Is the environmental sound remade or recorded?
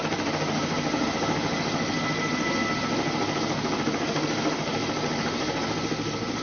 recorded